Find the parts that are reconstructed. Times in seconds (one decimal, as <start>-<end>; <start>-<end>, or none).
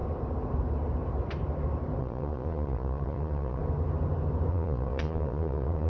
2.0-3.6; 4.5-5.9